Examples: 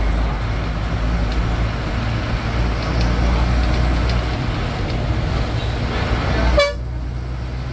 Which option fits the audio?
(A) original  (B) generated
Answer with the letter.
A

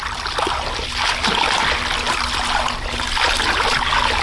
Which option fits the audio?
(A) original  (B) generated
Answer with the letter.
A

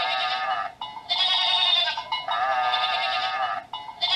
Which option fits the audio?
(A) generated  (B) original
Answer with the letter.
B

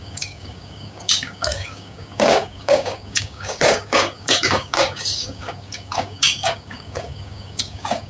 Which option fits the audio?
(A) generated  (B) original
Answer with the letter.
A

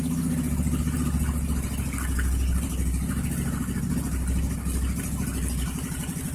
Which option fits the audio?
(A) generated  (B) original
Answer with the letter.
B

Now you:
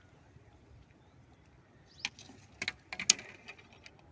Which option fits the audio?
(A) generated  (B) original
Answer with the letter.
B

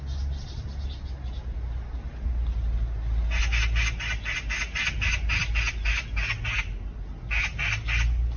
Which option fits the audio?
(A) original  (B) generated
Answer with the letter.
A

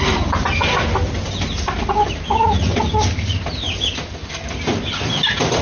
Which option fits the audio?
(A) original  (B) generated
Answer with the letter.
A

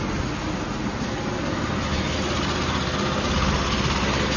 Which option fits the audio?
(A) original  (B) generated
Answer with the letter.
A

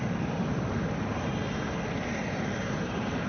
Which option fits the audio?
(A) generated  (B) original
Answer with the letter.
B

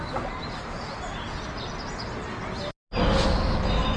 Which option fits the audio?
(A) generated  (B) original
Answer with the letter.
B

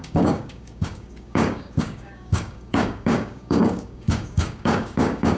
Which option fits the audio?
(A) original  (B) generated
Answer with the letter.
B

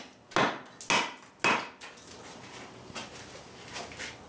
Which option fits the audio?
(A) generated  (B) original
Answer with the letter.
B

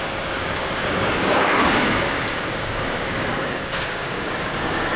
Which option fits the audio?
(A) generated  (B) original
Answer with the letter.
A